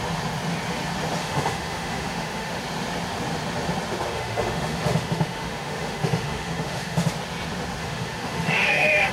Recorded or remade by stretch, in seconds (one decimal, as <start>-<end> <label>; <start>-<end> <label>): 0.0-1.2 recorded; 1.2-2.6 remade; 2.6-4.1 recorded; 4.1-7.1 remade; 7.1-7.8 recorded; 7.8-9.1 remade